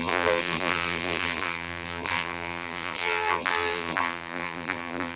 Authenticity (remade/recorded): remade